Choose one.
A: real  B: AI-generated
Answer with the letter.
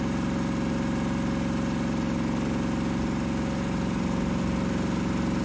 A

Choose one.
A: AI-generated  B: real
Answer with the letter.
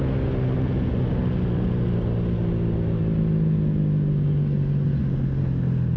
B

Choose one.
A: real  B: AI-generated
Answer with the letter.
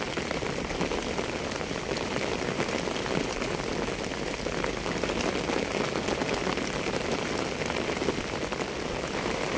A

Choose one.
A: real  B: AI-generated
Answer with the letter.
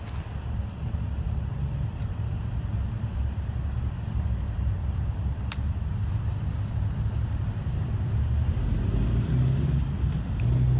A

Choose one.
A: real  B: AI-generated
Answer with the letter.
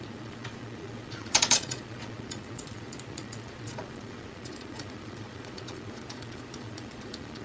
B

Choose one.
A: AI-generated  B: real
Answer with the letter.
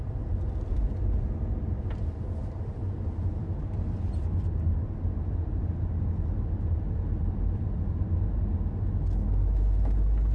B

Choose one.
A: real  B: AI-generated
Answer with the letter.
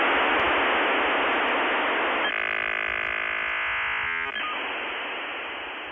A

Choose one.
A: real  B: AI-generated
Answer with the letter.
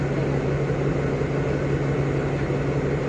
A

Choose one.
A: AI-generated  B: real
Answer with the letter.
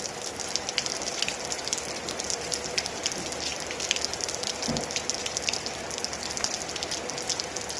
B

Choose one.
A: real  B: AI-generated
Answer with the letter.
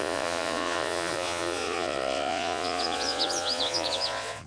B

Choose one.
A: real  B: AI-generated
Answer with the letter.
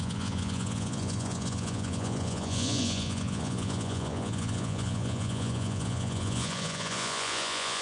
B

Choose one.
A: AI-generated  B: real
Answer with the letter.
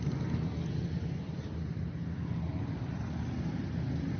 B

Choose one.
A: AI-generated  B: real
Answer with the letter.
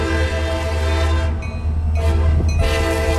B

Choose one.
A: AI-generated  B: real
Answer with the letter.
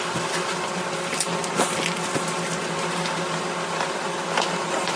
B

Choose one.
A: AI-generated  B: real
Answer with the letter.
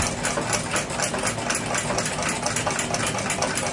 B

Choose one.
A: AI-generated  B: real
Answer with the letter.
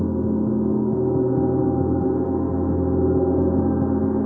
B